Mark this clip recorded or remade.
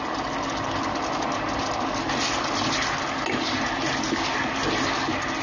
recorded